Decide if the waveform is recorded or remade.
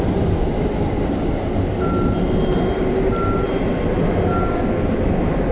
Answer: recorded